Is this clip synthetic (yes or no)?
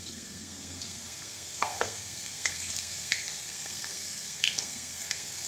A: yes